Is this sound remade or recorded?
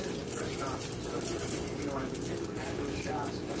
recorded